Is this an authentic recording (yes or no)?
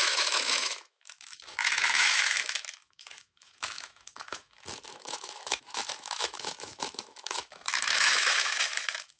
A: no